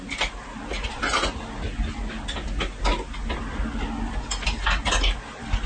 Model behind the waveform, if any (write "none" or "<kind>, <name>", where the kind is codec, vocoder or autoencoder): none